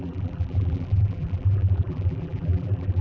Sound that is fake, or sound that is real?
fake